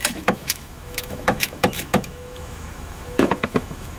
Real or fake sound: fake